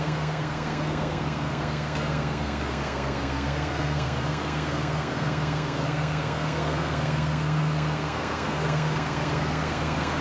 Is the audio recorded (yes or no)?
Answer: no